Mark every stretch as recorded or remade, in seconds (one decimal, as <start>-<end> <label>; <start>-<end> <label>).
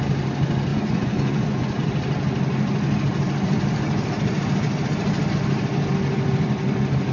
0.0-0.7 recorded; 0.7-1.6 remade; 1.6-7.1 recorded